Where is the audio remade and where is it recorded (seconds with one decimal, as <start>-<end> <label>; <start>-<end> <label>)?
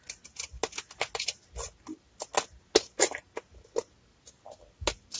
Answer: 0.0-5.2 recorded